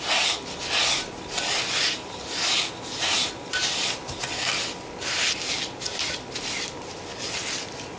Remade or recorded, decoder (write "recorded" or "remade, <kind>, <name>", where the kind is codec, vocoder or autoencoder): recorded